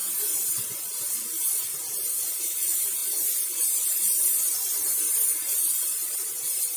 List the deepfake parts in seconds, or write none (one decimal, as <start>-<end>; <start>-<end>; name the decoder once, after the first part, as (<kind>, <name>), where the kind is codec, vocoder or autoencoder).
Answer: 0.0-1.2 (vocoder, BigVGAN v2); 3.0-5.1; 5.8-6.3